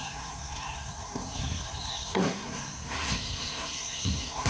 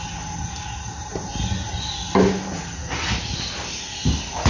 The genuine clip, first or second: second